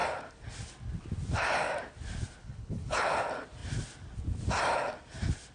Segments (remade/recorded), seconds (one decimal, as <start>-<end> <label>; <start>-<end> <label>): 0.0-2.4 recorded; 2.4-3.1 remade; 3.1-5.5 recorded